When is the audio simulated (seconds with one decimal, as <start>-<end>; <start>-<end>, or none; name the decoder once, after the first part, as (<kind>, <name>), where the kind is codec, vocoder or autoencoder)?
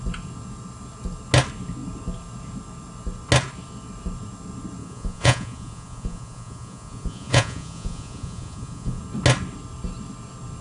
4.8-9.0 (vocoder, Vocos)